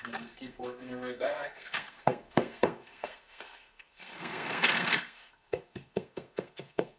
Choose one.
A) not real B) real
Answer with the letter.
A